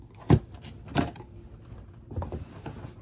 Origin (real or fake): real